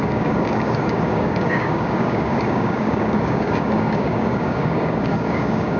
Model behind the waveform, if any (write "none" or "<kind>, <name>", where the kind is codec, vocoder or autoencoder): codec, DAC